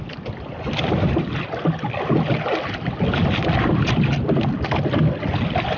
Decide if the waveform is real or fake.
real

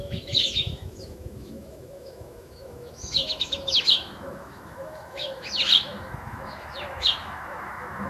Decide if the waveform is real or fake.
fake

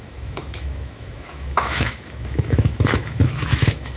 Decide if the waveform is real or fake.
fake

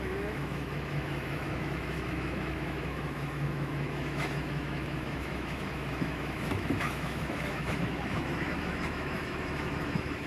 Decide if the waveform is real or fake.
fake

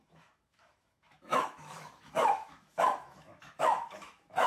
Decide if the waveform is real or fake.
fake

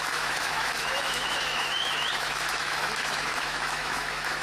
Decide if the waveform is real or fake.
fake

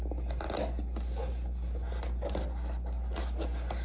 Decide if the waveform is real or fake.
real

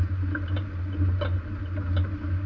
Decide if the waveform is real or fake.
real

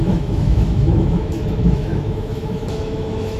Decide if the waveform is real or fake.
fake